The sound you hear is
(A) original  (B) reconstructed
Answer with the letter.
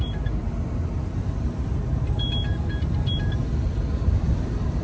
A